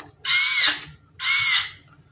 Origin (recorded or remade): recorded